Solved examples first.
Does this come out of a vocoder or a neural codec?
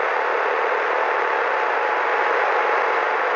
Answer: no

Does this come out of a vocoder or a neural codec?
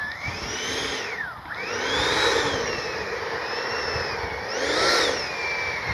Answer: no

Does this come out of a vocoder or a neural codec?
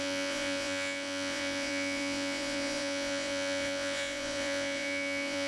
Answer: yes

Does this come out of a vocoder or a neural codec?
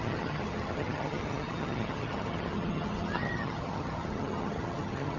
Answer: yes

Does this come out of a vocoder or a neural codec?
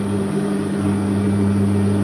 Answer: no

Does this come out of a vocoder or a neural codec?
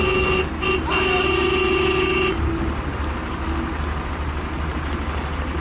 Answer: no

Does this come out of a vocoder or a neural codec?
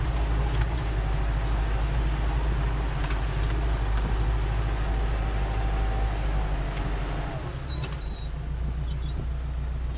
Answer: no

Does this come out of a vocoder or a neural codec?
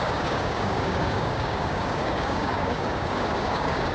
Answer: yes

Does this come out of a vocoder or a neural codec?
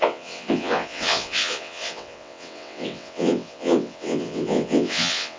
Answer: yes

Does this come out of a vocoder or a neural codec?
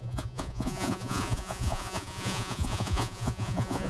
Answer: yes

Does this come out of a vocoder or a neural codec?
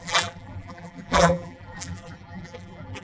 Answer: yes